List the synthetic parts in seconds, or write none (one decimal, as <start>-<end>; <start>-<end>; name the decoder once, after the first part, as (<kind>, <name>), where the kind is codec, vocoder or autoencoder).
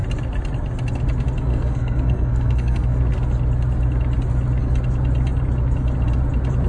1.5-3.0 (codec, SNAC)